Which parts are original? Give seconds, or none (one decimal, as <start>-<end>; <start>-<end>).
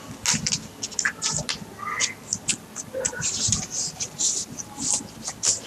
0.0-2.5; 5.0-5.7